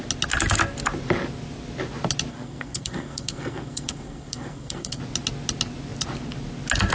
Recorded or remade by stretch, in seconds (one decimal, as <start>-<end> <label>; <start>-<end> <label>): 0.0-2.3 recorded; 2.3-5.0 remade; 5.0-6.9 recorded